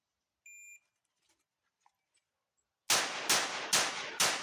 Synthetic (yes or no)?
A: no